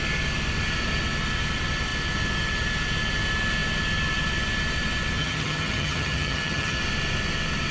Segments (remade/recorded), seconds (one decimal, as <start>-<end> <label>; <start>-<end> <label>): 0.0-5.2 recorded; 5.2-6.8 remade; 6.8-7.7 recorded